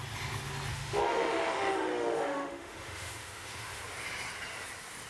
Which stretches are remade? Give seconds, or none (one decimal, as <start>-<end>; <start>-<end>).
0.7-3.8